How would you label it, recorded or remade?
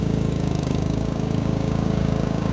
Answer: remade